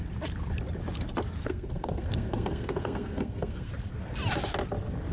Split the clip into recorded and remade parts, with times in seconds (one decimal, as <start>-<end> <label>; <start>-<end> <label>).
0.0-1.4 recorded; 1.4-3.7 remade; 3.7-5.1 recorded

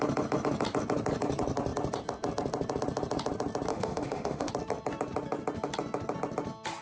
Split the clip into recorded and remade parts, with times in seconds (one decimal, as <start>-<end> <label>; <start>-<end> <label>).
0.0-3.7 recorded; 3.7-4.5 remade; 4.5-6.8 recorded

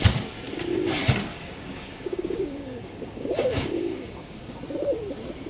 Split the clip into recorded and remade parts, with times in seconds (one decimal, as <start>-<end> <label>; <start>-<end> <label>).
0.0-1.3 recorded; 1.3-4.6 remade; 4.6-5.5 recorded

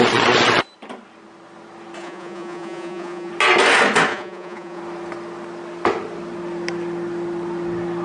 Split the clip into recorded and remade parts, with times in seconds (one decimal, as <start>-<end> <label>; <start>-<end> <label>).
0.0-2.0 recorded; 2.0-3.3 remade; 3.3-4.1 recorded; 4.1-4.8 remade; 4.8-8.0 recorded

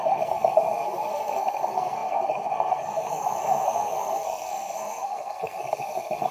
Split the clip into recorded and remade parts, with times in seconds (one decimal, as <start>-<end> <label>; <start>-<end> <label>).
0.0-6.3 remade